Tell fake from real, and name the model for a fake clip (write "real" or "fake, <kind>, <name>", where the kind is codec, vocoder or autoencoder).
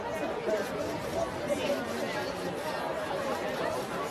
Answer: real